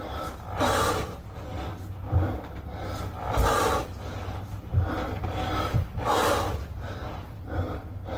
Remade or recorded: remade